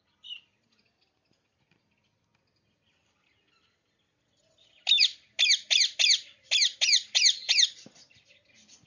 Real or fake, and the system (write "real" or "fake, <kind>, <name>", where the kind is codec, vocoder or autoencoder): real